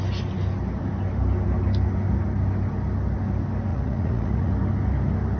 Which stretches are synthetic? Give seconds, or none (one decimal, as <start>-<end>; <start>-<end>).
3.7-4.5